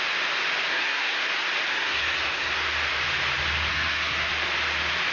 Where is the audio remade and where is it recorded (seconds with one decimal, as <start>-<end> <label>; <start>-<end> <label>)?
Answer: 0.0-0.7 recorded; 0.7-1.2 remade; 1.2-1.7 recorded; 1.7-2.5 remade; 2.5-3.7 recorded; 3.7-4.3 remade; 4.3-5.1 recorded

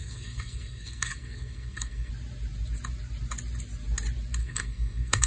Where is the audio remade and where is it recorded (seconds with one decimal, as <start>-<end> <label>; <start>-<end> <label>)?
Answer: 0.0-2.1 remade; 2.1-4.4 recorded; 4.4-5.3 remade